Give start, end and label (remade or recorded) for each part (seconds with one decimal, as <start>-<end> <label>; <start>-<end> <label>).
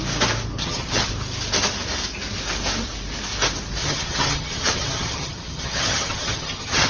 0.0-0.6 recorded; 0.6-1.1 remade; 1.1-3.8 recorded; 3.8-6.9 remade